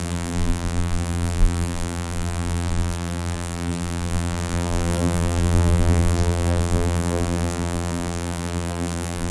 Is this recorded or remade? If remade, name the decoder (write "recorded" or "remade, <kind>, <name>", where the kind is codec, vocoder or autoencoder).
remade, vocoder, BigVGAN v2